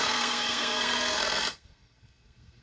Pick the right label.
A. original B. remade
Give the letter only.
B